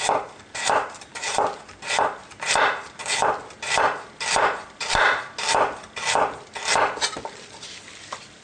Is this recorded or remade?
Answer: recorded